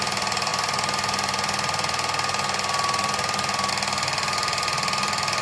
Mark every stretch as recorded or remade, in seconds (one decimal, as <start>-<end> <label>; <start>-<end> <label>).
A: 0.0-5.4 recorded